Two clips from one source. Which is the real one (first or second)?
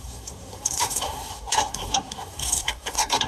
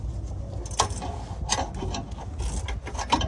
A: second